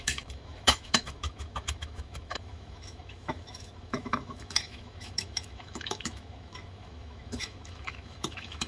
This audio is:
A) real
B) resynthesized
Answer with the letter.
B